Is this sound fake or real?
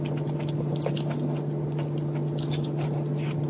real